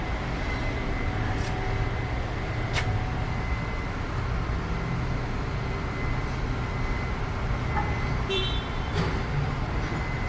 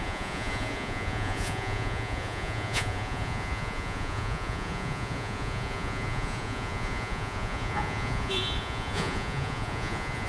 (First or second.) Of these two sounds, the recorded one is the first